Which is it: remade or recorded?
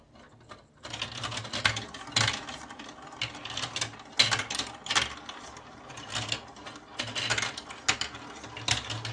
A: recorded